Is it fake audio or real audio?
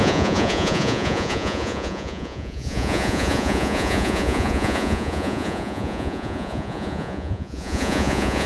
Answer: fake